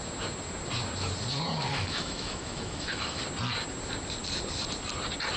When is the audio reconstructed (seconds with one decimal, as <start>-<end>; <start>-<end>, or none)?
1.7-3.2